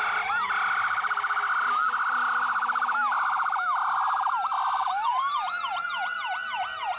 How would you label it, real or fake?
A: real